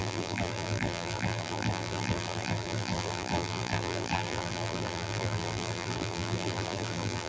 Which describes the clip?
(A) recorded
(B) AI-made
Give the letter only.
B